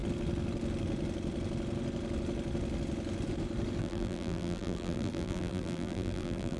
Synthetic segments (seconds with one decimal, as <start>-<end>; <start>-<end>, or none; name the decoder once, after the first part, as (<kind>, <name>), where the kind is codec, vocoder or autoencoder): 3.8-6.6 (vocoder, BigVGAN v2)